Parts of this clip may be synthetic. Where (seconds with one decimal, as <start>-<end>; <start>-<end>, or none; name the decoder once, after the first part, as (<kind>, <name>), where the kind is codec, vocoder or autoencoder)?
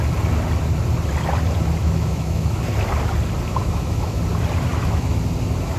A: 1.8-2.6 (autoencoder, DAC-VAE); 3.5-4.2; 4.7-5.2